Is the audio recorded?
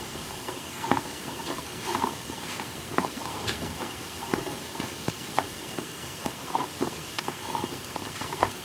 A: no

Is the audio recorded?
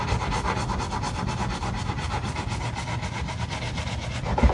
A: yes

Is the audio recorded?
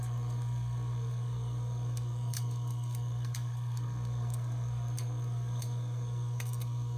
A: no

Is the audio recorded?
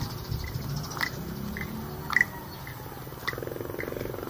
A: yes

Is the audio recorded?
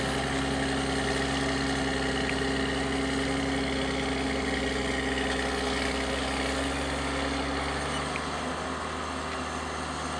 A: yes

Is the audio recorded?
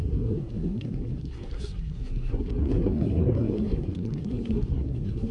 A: no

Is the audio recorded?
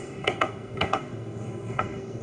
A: no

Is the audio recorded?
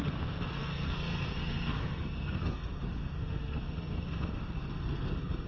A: no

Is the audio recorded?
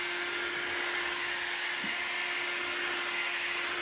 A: yes